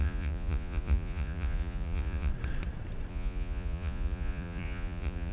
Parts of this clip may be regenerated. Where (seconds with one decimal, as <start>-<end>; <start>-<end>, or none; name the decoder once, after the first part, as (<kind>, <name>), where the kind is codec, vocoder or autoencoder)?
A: 0.0-2.3 (vocoder, Vocos); 3.1-5.3